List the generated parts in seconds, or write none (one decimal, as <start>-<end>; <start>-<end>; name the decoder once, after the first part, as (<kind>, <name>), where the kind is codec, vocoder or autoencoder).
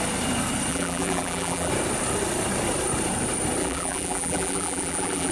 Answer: 0.7-1.7 (vocoder, BigVGAN v2); 3.6-5.3